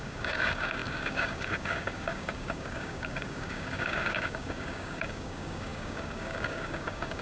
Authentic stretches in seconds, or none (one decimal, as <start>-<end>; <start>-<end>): none